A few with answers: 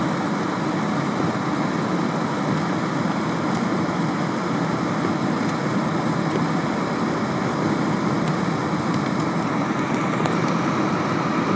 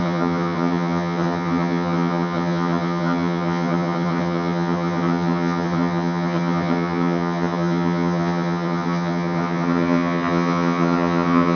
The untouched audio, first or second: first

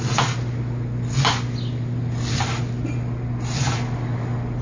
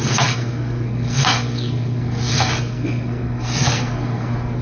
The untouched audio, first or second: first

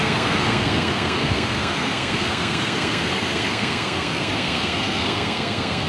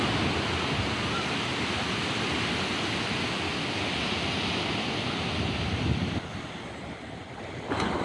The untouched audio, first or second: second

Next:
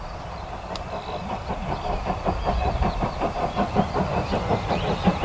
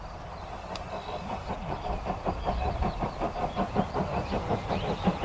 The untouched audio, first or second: second